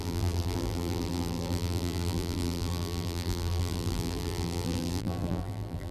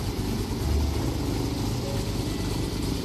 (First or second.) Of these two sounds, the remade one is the first